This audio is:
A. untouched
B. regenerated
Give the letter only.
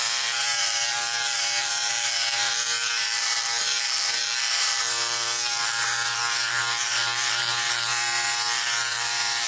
B